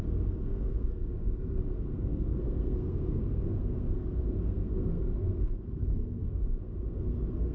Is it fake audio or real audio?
fake